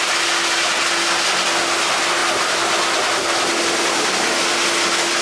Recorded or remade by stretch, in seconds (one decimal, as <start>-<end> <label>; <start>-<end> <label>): 0.0-5.2 recorded